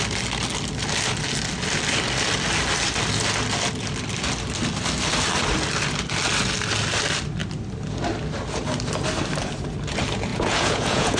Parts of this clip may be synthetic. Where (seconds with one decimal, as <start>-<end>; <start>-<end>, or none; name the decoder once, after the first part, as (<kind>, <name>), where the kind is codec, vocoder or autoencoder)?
10.3-11.2 (vocoder, Vocos)